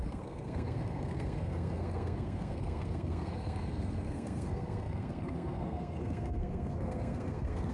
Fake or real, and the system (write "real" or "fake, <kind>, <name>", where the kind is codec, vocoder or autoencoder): fake, codec, SNAC